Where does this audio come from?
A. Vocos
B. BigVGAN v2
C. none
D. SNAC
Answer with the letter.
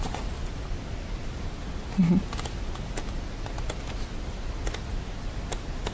C